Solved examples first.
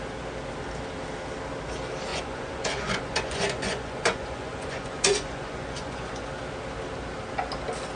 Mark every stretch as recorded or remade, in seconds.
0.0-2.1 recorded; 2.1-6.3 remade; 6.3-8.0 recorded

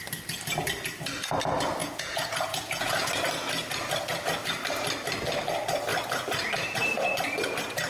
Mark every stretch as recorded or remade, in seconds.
0.0-1.8 recorded; 1.8-3.1 remade; 3.1-7.9 recorded